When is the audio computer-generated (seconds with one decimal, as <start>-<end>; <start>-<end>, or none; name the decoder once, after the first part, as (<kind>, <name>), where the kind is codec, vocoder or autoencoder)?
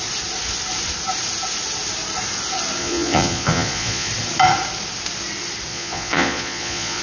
2.8-4.1 (vocoder, Vocos); 5.7-7.0